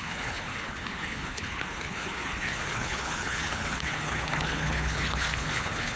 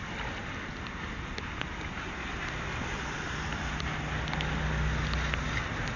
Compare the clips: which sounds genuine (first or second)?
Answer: second